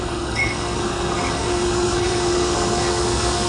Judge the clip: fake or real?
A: fake